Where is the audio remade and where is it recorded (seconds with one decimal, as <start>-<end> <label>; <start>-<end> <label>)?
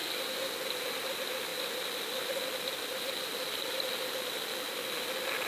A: 0.0-5.5 recorded